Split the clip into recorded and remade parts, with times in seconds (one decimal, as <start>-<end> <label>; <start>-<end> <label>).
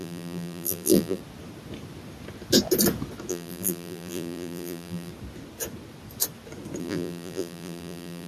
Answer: 0.0-1.2 remade; 1.2-3.3 recorded; 3.3-5.1 remade; 5.1-6.8 recorded; 6.8-8.3 remade